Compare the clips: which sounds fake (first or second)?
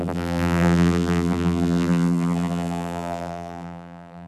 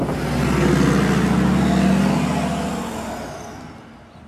first